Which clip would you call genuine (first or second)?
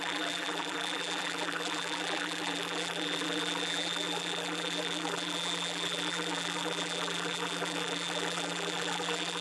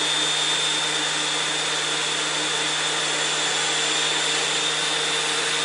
second